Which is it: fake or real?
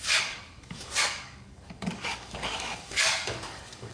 fake